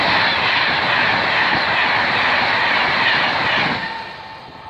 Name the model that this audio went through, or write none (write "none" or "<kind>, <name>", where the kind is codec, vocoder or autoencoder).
none